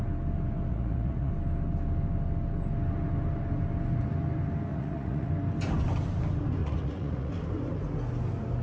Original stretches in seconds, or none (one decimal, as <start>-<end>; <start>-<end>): 0.0-0.7; 1.3-4.7; 5.3-6.6; 7.3-8.6